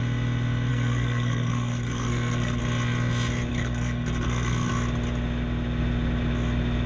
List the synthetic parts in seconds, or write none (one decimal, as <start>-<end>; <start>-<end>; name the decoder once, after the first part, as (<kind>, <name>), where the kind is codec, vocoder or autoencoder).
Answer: 0.7-2.6 (codec, SNAC); 3.5-4.7